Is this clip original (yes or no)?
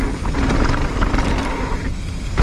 yes